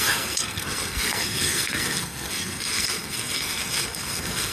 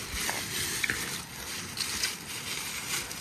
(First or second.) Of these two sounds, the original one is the second